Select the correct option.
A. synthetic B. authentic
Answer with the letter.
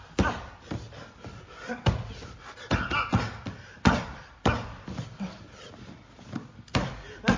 B